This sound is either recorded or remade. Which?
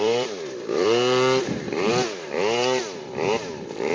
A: remade